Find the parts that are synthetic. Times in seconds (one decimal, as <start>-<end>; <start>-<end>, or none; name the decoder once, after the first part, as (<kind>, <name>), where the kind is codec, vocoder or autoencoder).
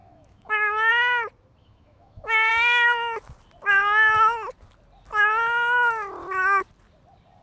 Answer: 0.0-0.9 (autoencoder, DAC-VAE); 1.6-2.5